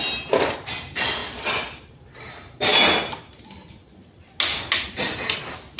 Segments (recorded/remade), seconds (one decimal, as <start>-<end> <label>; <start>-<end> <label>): 0.0-1.2 recorded; 1.2-2.3 remade; 2.3-5.8 recorded